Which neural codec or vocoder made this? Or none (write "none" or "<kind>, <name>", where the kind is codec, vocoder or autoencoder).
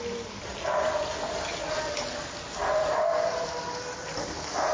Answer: none